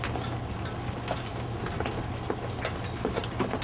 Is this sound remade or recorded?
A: recorded